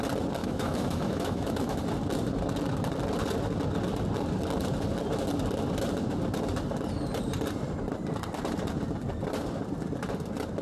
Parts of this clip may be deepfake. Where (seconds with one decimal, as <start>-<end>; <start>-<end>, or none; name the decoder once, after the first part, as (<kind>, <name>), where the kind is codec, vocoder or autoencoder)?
0.4-1.8 (autoencoder, DAC-VAE)